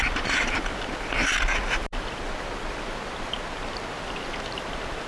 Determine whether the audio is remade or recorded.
recorded